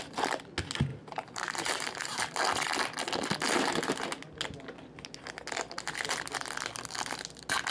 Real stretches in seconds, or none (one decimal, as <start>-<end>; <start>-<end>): 0.0-0.9; 2.2-7.7